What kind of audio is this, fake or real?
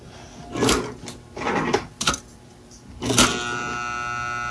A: real